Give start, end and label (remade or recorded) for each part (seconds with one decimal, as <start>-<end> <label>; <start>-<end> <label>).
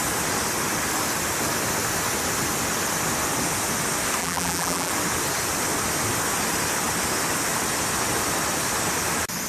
0.0-4.2 recorded; 4.2-4.9 remade; 4.9-9.5 recorded